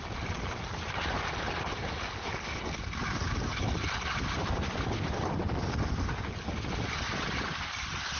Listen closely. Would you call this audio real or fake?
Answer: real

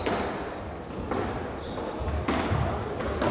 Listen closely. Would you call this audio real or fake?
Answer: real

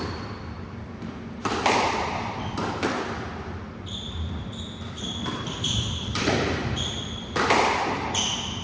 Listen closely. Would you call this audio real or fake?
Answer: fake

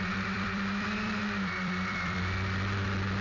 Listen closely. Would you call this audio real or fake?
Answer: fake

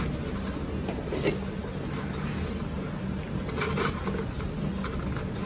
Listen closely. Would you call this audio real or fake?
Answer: real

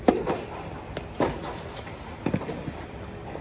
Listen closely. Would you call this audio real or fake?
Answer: real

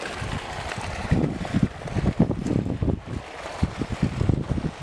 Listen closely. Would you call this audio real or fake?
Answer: real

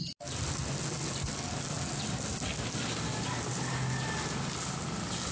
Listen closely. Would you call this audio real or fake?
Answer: real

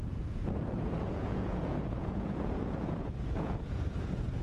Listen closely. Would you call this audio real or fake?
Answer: fake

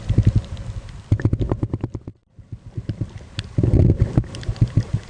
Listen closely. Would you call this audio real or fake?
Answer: real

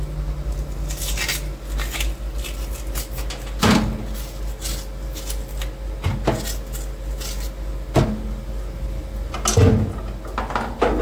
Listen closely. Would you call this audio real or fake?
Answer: real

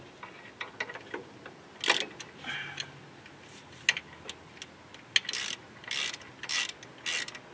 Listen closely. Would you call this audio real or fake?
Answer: real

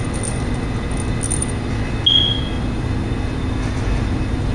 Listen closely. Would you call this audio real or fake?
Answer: real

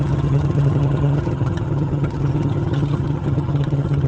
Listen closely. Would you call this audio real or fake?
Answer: fake